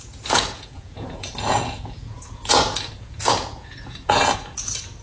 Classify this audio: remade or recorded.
remade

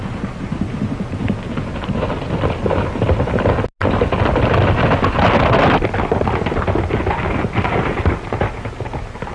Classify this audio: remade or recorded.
recorded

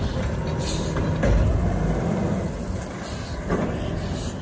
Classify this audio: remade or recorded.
recorded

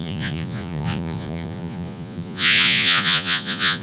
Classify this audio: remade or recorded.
remade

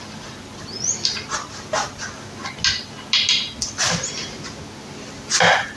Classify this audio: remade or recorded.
recorded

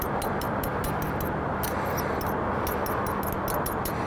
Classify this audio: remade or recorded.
recorded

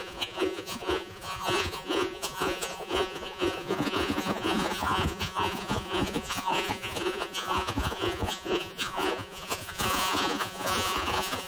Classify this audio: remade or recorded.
remade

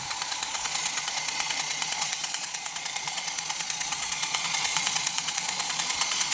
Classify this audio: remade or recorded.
remade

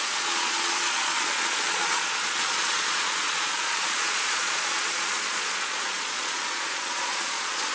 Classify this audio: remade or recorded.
remade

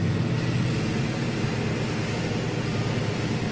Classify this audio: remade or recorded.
recorded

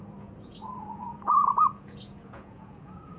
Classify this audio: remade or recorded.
remade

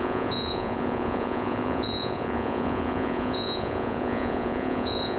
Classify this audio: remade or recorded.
remade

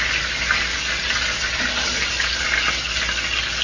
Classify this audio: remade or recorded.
recorded